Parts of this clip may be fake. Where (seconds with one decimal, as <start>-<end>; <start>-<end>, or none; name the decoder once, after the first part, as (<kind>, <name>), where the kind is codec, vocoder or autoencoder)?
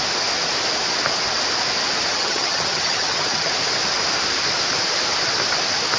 2.1-3.5 (vocoder, HiFi-GAN)